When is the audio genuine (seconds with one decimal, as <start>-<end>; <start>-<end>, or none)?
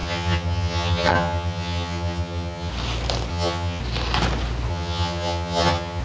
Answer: 2.7-3.3; 3.8-4.7